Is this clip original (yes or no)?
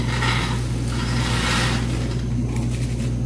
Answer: yes